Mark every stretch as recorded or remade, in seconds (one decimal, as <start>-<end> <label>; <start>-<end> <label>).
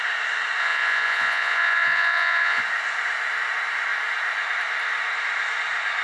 0.0-0.6 recorded; 0.6-2.6 remade; 2.6-6.0 recorded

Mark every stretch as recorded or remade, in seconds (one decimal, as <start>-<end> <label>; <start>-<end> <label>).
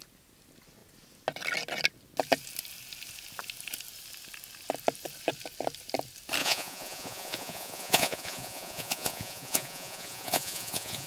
0.0-6.4 recorded; 6.4-11.1 remade